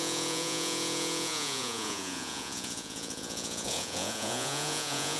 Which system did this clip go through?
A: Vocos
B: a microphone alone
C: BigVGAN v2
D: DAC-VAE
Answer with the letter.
A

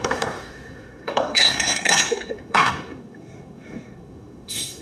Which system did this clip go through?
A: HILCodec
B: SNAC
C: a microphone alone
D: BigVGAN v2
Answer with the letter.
B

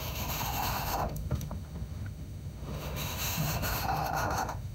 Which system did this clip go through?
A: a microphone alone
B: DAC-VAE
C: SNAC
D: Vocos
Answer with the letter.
B